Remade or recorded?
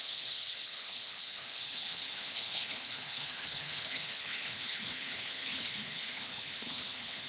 remade